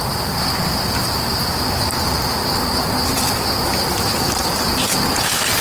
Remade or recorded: recorded